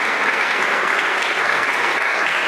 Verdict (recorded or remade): remade